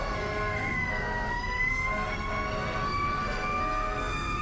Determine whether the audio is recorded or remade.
remade